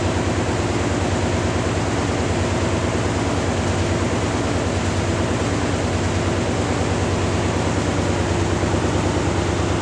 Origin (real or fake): real